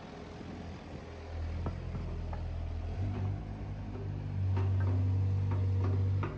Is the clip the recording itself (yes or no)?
yes